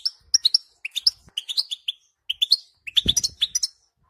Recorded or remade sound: recorded